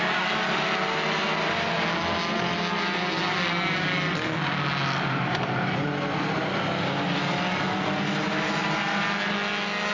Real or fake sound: real